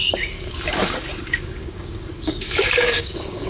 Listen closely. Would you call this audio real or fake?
fake